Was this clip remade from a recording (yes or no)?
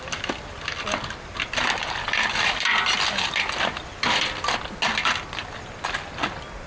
no